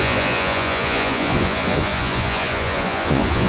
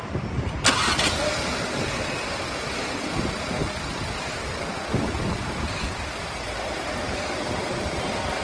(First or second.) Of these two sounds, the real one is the second